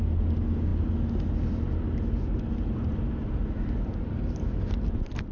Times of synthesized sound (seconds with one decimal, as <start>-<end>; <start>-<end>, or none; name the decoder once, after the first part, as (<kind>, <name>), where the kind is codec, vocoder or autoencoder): none